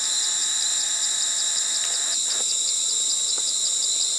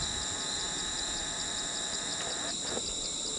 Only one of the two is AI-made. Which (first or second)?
first